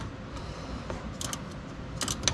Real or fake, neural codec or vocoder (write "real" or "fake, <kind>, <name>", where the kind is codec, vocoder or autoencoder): real